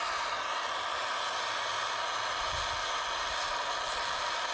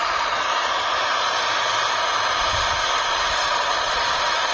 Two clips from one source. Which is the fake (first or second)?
second